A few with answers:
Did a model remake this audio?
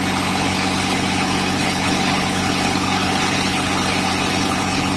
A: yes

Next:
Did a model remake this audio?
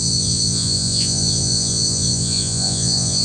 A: yes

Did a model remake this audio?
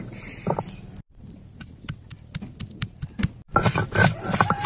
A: no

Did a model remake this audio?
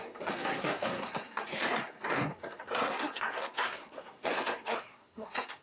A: yes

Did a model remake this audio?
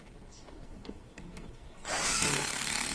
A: yes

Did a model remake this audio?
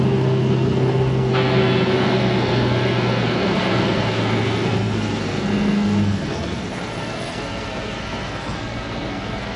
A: yes